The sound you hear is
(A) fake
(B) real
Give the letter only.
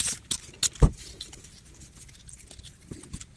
A